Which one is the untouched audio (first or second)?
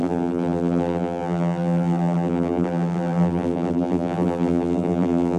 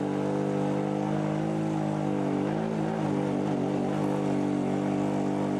second